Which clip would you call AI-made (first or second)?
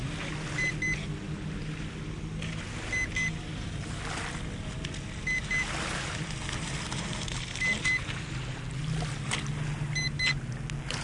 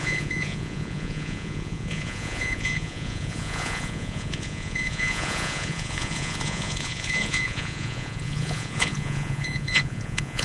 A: second